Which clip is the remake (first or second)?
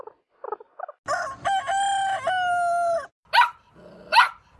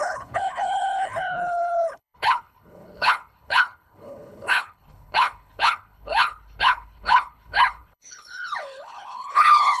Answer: second